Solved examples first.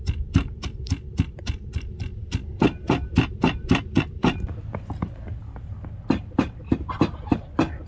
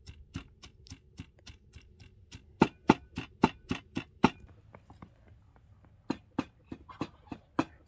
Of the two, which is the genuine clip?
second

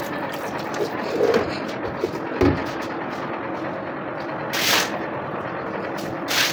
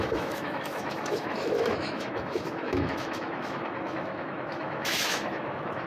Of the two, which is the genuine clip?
first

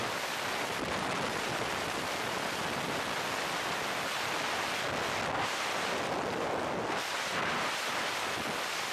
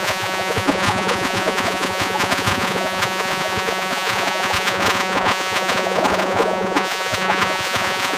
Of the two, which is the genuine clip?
first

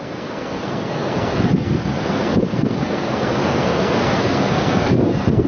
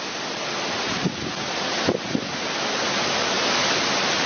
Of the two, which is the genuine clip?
second